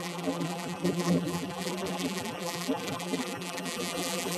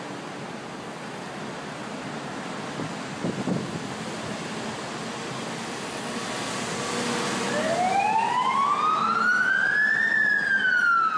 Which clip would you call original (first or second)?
second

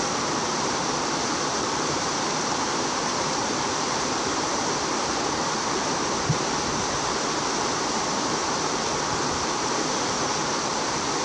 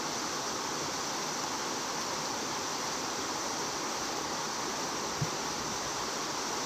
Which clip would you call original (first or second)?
second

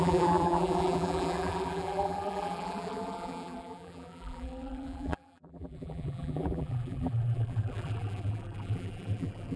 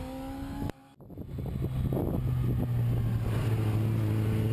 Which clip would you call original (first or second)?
second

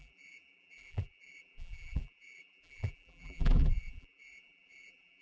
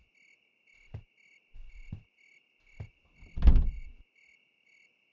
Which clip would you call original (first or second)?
second